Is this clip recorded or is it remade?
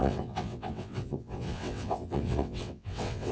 remade